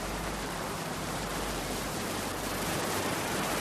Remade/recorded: remade